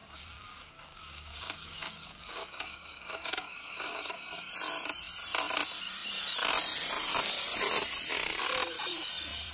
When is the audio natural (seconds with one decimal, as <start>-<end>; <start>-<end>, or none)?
4.5-9.5